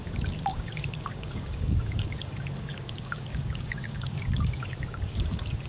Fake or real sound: fake